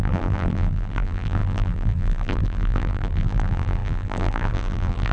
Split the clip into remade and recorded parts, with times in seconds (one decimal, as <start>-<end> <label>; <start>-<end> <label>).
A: 0.0-5.1 remade